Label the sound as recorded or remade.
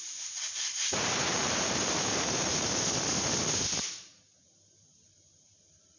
remade